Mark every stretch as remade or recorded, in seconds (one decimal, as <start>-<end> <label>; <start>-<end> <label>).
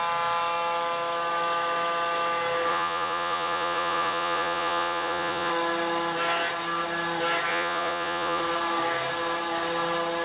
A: 0.0-2.7 recorded; 2.7-5.5 remade; 5.5-7.5 recorded; 7.5-8.4 remade; 8.4-10.2 recorded